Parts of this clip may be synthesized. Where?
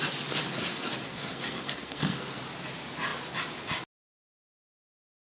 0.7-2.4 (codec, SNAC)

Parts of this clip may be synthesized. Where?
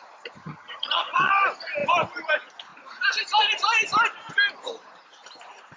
0.4-1.3 (vocoder, HiFi-GAN)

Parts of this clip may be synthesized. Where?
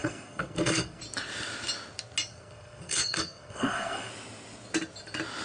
0.0-1.0 (codec, SNAC); 2.3-4.1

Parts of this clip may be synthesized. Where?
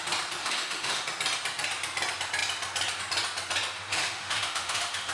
0.4-1.0 (autoencoder, DAC-VAE); 3.9-5.1